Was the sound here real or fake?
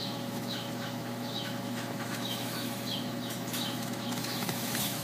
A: fake